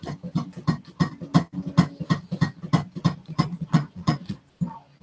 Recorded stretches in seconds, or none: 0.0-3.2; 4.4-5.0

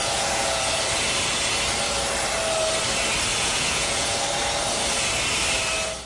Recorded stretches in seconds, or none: 0.6-3.3; 4.2-6.1

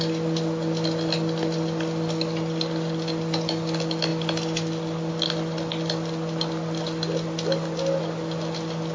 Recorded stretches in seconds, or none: 0.0-8.9